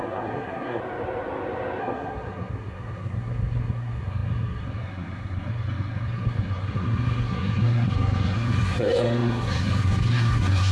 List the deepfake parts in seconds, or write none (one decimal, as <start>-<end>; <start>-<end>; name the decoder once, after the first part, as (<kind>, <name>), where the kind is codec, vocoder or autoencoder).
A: 0.0-0.8 (codec, SNAC); 1.8-10.7